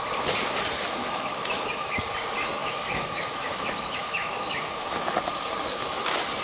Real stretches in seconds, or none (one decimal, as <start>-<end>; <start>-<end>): 0.0-1.0; 2.0-2.6; 5.1-6.4